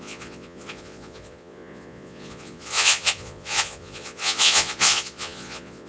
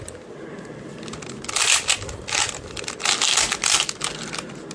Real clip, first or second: second